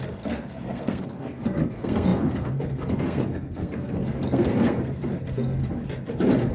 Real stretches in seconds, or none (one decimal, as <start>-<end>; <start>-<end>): 5.6-6.5